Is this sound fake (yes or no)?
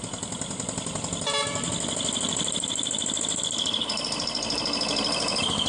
no